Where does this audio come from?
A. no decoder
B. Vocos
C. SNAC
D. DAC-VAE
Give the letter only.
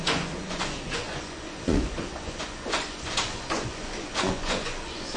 B